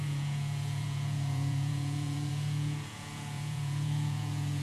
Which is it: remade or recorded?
remade